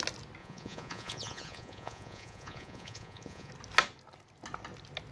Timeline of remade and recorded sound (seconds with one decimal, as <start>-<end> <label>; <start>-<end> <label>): 0.0-0.4 recorded; 0.4-3.5 remade; 3.5-5.1 recorded